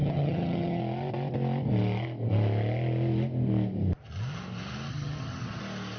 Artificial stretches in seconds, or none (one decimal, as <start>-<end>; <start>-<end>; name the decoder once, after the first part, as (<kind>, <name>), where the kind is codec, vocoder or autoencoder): 0.0-0.8 (vocoder, HiFi-GAN); 4.9-5.6